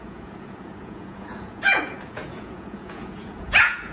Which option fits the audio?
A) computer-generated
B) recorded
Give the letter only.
A